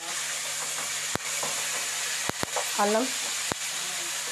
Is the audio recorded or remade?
recorded